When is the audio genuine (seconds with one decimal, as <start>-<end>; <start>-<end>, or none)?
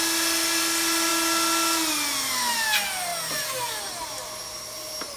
0.0-5.2